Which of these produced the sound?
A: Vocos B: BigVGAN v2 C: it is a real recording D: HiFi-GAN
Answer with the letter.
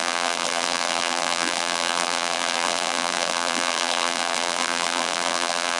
B